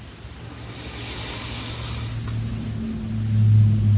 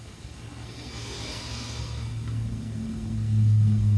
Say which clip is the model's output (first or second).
second